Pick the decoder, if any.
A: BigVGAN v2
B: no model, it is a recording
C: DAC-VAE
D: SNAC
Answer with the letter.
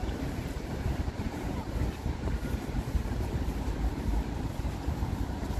A